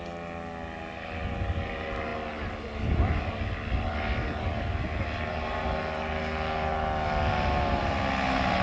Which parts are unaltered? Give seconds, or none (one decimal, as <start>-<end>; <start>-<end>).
0.0-5.3; 5.8-8.6